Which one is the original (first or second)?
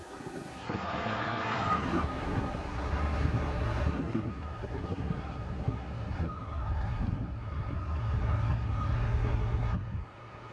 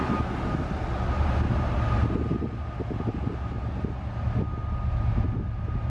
second